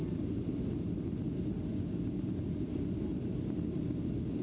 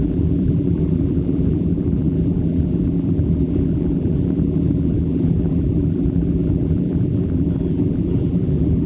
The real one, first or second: first